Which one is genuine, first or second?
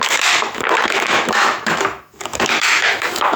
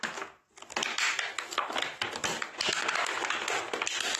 second